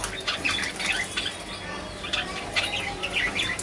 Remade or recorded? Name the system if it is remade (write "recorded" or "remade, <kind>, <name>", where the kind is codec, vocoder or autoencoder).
recorded